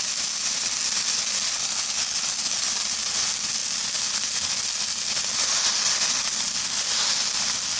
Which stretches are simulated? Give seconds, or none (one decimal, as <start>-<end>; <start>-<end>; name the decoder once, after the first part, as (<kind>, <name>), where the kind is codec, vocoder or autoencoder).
none